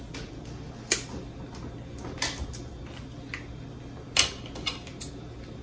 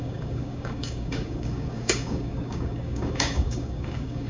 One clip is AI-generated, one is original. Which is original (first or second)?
first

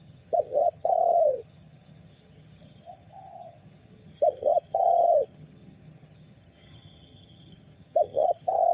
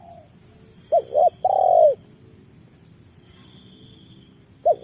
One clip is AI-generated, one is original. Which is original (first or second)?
second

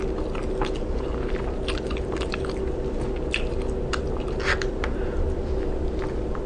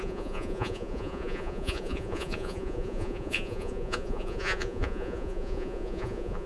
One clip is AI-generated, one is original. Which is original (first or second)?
first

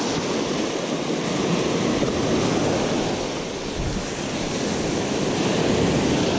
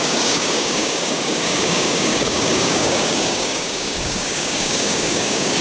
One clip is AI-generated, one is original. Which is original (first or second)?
first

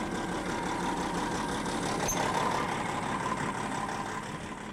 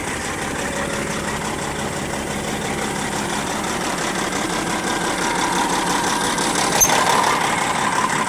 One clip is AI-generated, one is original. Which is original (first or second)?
first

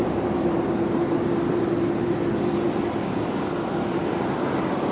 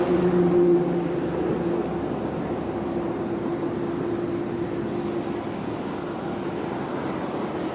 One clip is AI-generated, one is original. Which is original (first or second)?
second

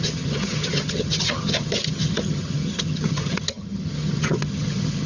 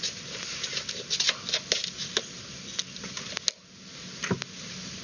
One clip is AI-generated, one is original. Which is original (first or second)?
second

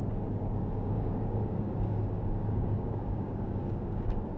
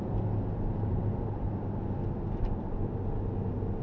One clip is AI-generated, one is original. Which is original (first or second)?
second